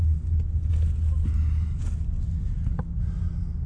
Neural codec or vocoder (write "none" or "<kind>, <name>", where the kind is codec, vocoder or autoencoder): none